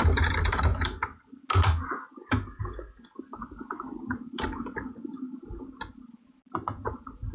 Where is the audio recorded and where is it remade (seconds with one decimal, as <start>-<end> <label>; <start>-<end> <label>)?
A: 0.0-0.7 remade; 0.7-3.2 recorded; 3.2-5.0 remade; 5.0-7.3 recorded